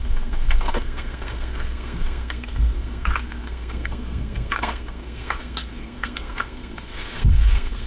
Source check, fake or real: fake